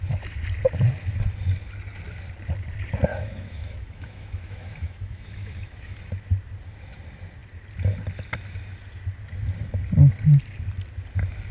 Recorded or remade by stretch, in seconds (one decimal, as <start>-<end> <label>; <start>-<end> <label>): 0.0-3.1 recorded; 3.1-6.0 remade; 6.0-11.5 recorded